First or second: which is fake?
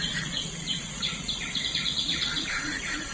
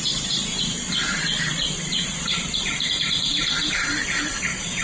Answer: first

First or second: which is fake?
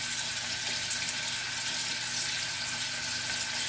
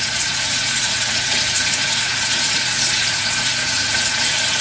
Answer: second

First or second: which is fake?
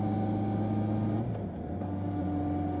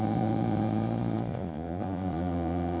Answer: second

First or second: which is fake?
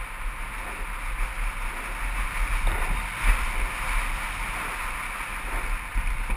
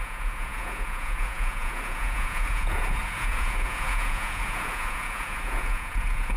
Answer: second